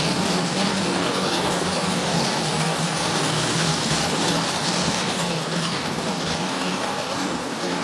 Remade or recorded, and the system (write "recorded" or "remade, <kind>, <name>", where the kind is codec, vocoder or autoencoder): remade, codec, DAC